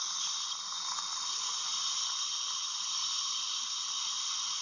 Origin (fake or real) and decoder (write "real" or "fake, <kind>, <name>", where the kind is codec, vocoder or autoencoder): real